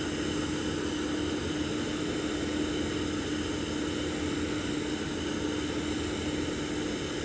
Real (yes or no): yes